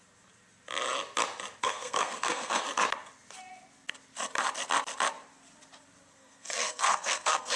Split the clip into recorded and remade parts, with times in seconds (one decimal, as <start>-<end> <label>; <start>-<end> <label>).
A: 0.0-1.6 recorded; 1.6-2.6 remade; 2.6-6.1 recorded; 6.1-7.6 remade